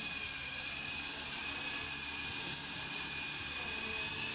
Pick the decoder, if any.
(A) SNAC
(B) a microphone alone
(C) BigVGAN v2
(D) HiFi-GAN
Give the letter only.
B